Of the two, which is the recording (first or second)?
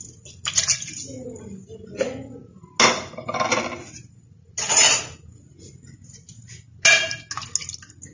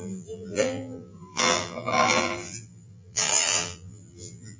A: first